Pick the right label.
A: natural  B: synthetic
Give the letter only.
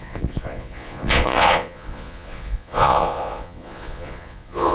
B